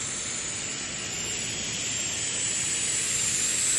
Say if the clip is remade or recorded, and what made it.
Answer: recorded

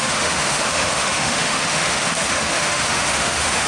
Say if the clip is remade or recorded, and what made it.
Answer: remade, autoencoder, DAC-VAE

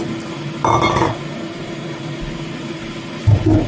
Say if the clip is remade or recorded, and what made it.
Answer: recorded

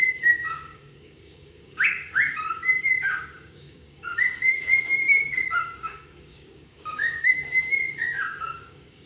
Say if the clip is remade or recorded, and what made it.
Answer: remade, codec, DAC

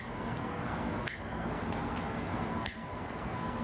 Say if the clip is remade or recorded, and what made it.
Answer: remade, codec, SNAC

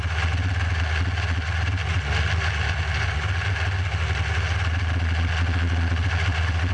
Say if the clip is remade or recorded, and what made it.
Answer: recorded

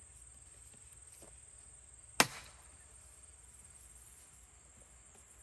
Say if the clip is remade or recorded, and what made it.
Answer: recorded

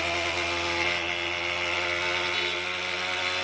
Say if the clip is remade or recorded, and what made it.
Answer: recorded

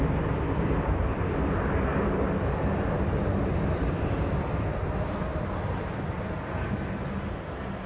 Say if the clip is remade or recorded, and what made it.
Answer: recorded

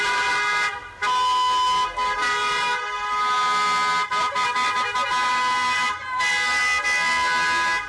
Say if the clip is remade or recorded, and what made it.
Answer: recorded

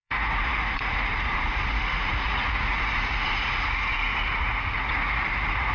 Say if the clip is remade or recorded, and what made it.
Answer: remade, vocoder, Vocos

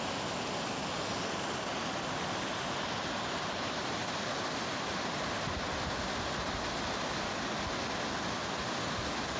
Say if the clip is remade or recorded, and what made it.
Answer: recorded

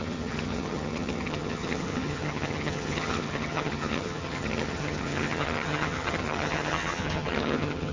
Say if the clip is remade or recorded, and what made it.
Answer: remade, vocoder, HiFi-GAN